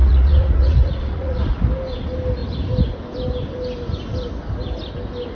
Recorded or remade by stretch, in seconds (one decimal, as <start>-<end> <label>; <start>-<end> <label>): 0.0-1.7 remade; 1.7-5.3 recorded